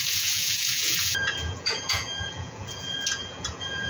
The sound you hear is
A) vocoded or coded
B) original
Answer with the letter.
A